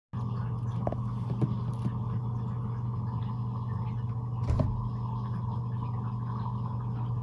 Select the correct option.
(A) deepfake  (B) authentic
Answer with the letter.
B